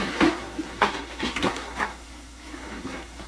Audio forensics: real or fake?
fake